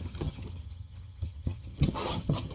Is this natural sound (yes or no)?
no